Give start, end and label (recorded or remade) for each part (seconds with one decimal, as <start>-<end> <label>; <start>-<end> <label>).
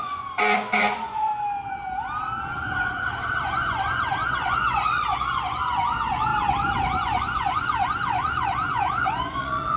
0.0-1.3 remade; 1.3-2.5 recorded; 2.5-6.3 remade; 6.3-7.0 recorded; 7.0-9.8 remade